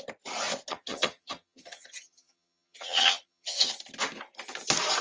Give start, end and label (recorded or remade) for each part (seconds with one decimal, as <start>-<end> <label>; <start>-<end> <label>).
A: 0.0-0.7 recorded; 0.7-3.7 remade; 3.7-5.0 recorded